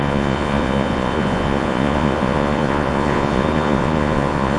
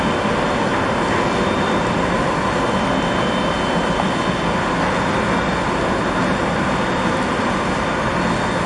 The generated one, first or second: first